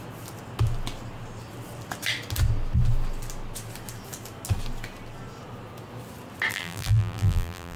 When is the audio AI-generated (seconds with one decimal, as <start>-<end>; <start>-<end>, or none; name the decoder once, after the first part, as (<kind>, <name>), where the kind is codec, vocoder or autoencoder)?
6.5-7.8 (vocoder, BigVGAN v2)